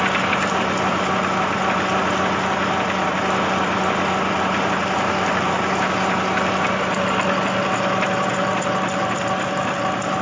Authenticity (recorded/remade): recorded